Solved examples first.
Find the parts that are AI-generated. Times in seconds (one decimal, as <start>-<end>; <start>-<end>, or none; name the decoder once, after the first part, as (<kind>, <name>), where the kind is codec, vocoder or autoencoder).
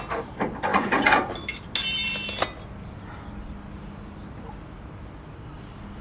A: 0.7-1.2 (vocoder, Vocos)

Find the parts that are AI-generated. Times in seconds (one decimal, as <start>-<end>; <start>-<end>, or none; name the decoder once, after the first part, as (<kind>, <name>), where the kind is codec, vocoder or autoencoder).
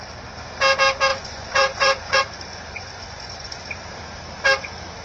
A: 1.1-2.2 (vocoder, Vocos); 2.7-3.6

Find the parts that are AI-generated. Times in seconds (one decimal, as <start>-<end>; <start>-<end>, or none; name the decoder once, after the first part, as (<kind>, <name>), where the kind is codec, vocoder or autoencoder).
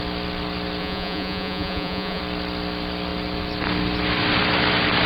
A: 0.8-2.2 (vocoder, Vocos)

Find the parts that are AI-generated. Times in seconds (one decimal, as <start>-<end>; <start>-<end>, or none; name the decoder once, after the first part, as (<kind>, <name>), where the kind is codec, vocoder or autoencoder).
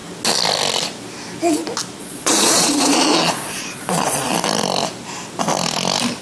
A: 2.0-4.3 (vocoder, Vocos)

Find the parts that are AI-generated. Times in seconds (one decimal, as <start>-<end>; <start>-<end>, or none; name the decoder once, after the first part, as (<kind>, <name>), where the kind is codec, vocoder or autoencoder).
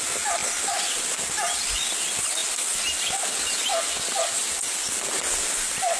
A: none